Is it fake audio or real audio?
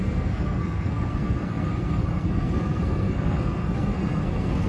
fake